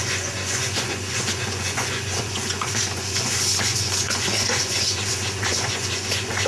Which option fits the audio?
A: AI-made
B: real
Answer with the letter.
A